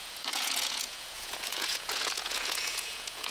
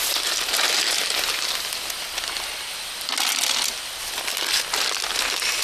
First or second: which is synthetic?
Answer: first